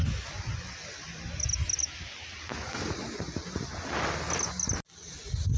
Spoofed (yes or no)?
no